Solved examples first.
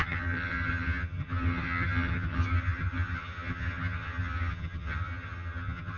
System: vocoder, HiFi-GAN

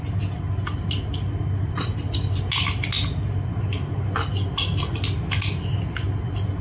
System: none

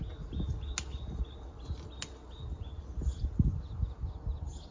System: none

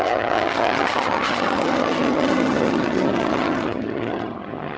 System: vocoder, HiFi-GAN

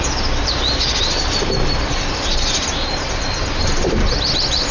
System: none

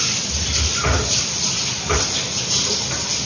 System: none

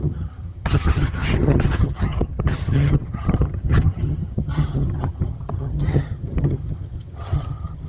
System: vocoder, HiFi-GAN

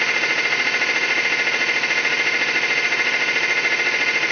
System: none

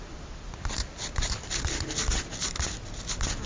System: none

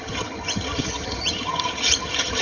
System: vocoder, HiFi-GAN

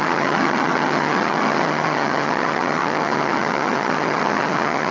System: vocoder, HiFi-GAN